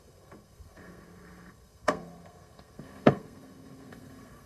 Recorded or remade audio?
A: remade